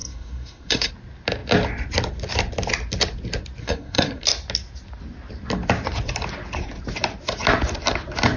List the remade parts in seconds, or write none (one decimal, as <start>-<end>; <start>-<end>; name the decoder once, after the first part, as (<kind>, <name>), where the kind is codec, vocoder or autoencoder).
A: 0.0-0.9 (codec, SNAC); 3.6-4.2